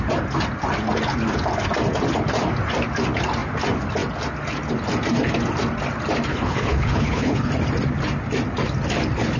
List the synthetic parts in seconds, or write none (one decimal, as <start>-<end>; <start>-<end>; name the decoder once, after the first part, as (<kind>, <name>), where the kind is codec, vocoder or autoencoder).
6.3-7.5 (codec, HILCodec)